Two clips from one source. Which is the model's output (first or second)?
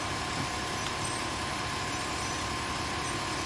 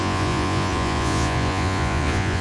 second